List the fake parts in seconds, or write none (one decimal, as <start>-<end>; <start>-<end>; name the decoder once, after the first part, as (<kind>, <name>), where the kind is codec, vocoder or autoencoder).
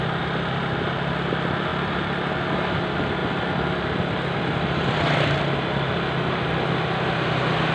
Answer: none